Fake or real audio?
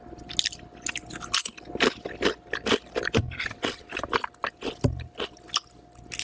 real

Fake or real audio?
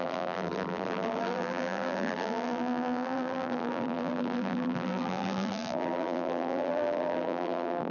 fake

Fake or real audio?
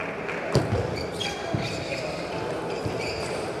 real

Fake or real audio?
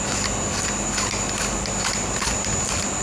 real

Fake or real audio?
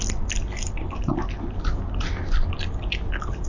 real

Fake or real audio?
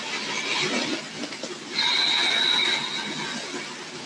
real